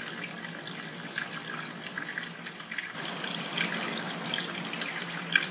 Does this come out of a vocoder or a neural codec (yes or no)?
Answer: no